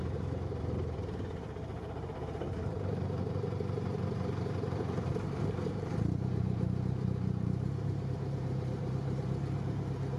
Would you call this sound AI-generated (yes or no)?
yes